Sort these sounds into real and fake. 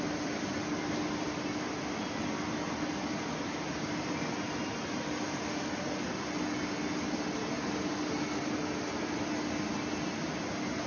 real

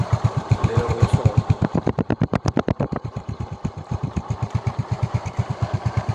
fake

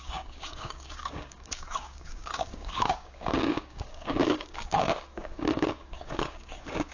fake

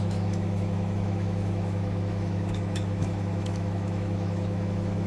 fake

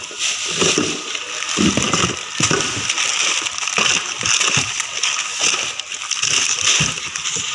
real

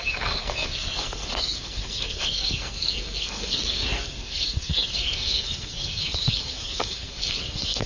fake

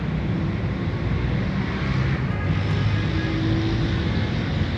real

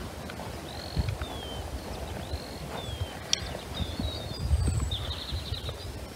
real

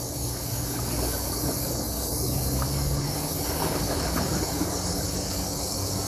fake